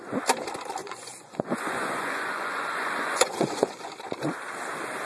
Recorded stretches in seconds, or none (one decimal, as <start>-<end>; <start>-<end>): 0.0-0.8; 3.9-5.1